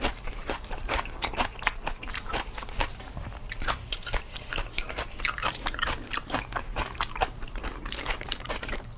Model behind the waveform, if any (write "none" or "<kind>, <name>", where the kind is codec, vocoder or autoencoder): vocoder, BigVGAN v2